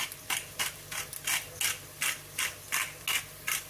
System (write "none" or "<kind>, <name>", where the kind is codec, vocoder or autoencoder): none